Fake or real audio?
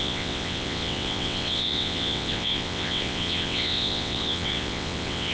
fake